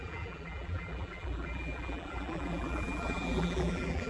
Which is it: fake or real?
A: fake